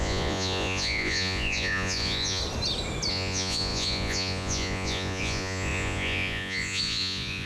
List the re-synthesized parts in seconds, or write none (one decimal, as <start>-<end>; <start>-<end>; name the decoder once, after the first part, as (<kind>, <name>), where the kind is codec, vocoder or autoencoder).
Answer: 0.0-2.4 (vocoder, Vocos); 3.1-7.5